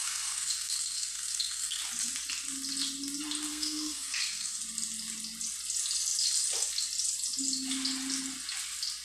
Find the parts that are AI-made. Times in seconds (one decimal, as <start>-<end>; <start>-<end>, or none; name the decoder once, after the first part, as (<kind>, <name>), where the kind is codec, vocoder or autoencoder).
0.0-1.8 (codec, SNAC); 3.5-4.6